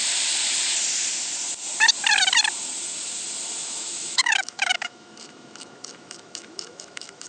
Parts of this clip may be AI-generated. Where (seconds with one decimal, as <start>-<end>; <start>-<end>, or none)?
3.6-7.3